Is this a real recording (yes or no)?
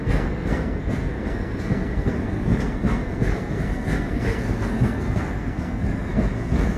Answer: no